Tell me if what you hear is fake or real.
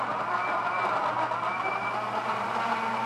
real